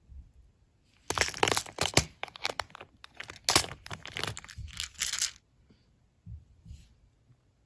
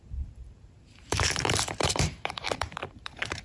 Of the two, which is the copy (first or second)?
second